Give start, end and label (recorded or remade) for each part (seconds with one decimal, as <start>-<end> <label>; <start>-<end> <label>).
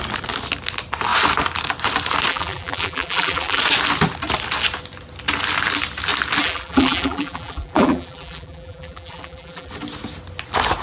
0.0-2.3 recorded; 2.3-3.6 remade; 3.6-6.4 recorded; 6.4-9.7 remade; 9.7-10.8 recorded